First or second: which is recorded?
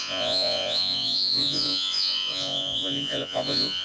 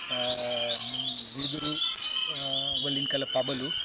second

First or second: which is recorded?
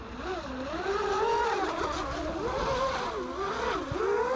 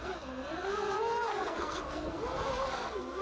first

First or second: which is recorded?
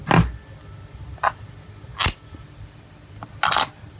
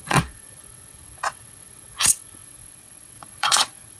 first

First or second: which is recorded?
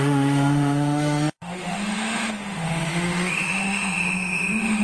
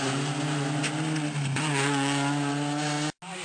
second